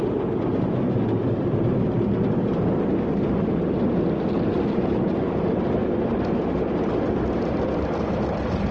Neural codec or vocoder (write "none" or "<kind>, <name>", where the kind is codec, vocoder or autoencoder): none